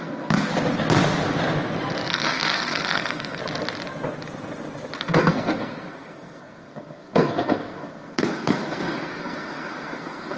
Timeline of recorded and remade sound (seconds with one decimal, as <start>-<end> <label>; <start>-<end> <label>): 0.0-0.5 remade; 0.5-2.1 recorded; 2.1-3.4 remade; 3.4-5.0 recorded; 5.0-10.4 remade